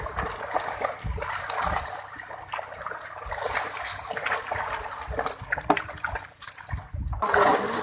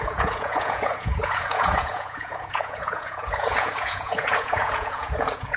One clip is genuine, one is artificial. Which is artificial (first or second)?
second